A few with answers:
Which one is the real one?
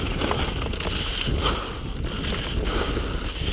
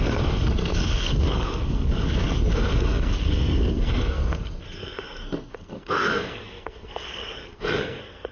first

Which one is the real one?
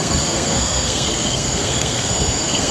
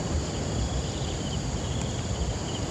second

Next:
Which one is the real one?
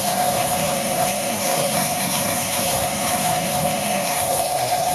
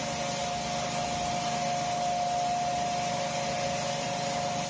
second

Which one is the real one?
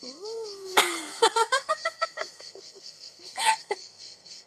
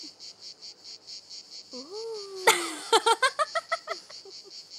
second